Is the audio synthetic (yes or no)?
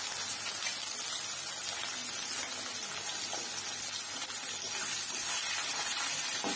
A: no